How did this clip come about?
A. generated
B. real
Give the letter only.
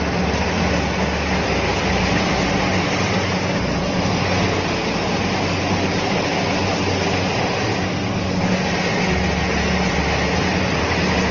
B